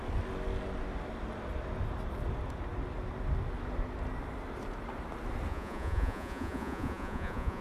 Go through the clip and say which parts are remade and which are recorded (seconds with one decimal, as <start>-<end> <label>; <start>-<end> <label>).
0.0-5.5 recorded; 5.5-7.6 remade

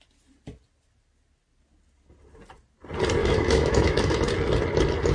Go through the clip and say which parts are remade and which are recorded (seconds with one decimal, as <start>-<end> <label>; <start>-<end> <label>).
0.0-3.2 recorded; 3.2-4.2 remade; 4.2-5.1 recorded

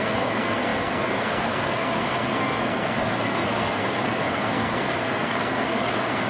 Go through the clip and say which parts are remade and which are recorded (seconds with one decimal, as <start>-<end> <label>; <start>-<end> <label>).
0.0-6.3 remade

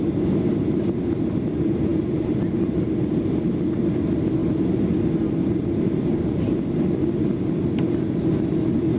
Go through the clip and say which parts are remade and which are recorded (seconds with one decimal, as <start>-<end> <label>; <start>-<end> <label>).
0.0-9.0 recorded

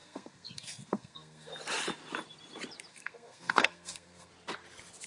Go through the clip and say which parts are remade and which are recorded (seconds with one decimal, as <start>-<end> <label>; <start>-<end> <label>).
0.0-1.5 remade; 1.5-2.9 recorded; 2.9-4.3 remade; 4.3-5.1 recorded

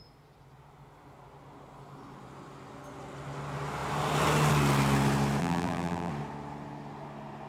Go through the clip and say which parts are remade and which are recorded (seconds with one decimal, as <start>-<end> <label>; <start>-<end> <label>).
0.0-5.4 recorded; 5.4-6.1 remade; 6.1-7.5 recorded